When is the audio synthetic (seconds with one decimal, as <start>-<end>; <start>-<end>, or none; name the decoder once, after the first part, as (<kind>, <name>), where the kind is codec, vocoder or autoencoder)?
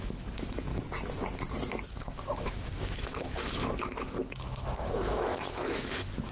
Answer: 0.0-0.7 (autoencoder, DAC-VAE); 1.9-6.3